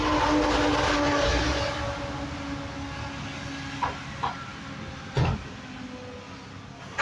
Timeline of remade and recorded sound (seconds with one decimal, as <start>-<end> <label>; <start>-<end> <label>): 0.0-7.0 recorded